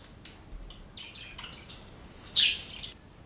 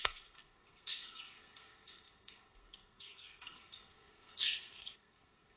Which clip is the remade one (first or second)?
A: second